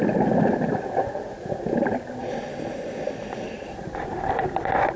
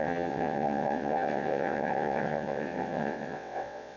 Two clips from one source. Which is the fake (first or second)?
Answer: second